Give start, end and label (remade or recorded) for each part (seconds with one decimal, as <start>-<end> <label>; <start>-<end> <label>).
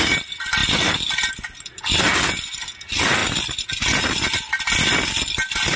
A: 0.0-5.8 recorded